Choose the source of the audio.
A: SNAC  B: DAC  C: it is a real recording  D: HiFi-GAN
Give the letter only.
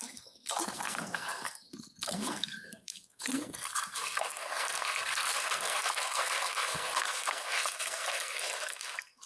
A